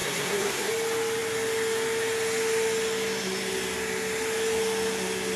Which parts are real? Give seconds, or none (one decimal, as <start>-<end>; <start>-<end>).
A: 0.7-5.4

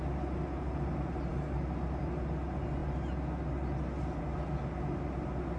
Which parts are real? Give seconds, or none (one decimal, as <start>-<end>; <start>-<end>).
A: 0.0-5.6

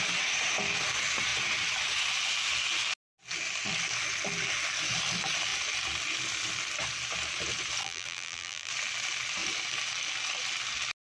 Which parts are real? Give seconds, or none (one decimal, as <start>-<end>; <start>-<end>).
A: 0.0-7.8; 8.7-11.0